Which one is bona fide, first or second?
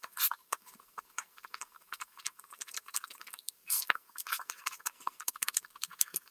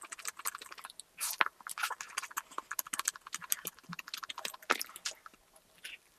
second